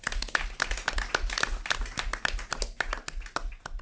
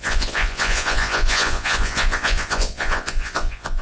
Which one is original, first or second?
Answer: first